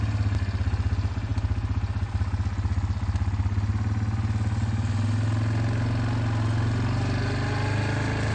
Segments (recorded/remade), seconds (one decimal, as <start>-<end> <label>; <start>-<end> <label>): 0.0-8.3 recorded

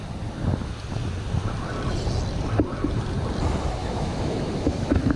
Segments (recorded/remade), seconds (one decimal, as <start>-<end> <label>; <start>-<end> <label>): 0.0-3.8 recorded; 3.8-5.2 remade

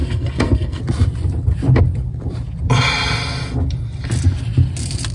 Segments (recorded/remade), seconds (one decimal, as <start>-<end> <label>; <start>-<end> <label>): 0.0-0.8 remade; 0.8-5.1 recorded